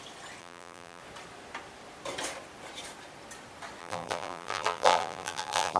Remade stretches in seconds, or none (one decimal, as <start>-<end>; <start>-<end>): 0.4-1.0; 3.8-5.8